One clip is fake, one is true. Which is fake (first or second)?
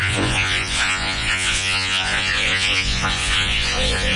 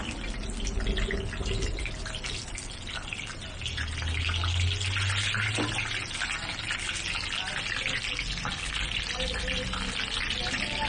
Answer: first